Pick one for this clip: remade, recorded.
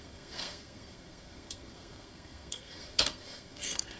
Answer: remade